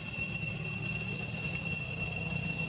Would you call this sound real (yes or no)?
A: yes